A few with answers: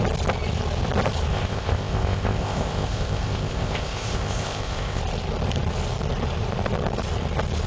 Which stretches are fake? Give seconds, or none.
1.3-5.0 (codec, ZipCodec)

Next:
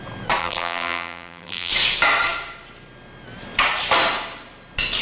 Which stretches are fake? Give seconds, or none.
0.4-1.7 (vocoder, BigVGAN v2)

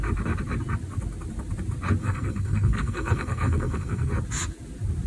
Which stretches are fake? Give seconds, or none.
2.0-4.1 (codec, SNAC)

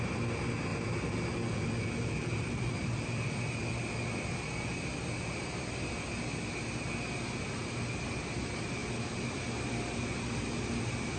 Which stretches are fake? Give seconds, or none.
0.7-5.9 (vocoder, BigVGAN v2)